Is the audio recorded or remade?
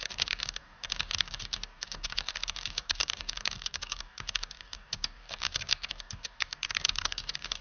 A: remade